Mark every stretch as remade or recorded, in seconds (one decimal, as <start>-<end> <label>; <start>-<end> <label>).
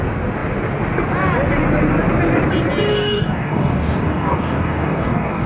0.0-2.9 recorded; 2.9-5.5 remade